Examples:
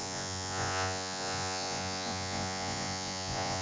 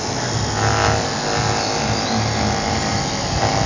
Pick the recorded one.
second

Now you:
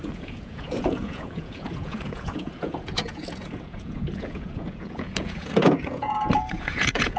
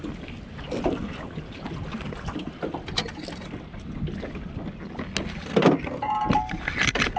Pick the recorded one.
second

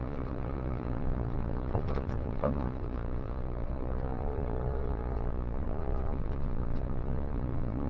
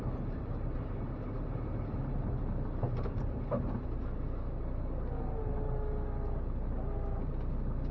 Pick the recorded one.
second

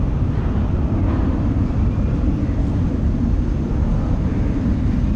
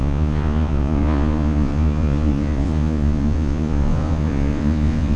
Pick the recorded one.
first